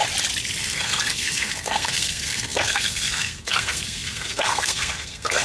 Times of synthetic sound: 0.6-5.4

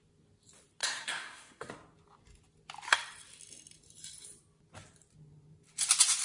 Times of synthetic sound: 0.8-1.7

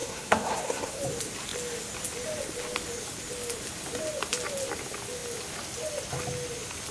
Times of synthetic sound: 0.0-1.0